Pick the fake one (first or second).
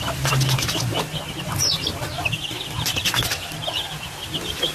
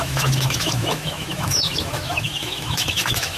second